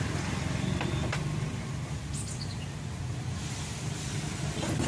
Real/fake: real